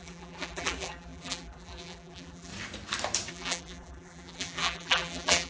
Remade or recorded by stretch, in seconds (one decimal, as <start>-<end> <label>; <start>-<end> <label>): 0.0-2.5 remade; 2.5-3.3 recorded; 3.3-5.5 remade